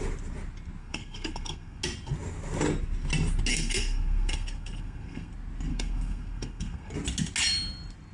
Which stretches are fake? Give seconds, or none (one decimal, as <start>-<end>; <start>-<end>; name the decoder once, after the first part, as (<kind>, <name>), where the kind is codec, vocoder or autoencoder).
0.8-1.8 (codec, SNAC); 3.5-5.3; 5.7-6.9